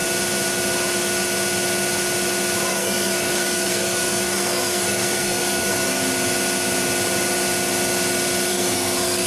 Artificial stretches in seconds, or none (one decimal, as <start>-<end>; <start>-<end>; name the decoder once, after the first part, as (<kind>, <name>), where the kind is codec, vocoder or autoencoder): 2.7-6.0 (codec, SNAC); 8.5-9.3